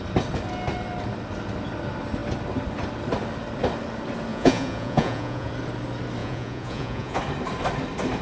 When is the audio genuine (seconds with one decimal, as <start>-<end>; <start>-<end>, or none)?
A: 0.0-4.3; 5.5-6.2; 7.2-8.2